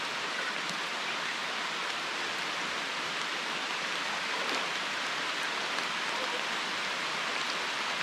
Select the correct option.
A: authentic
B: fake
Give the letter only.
A